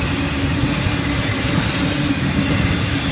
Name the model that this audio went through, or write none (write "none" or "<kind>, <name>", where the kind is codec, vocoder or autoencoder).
none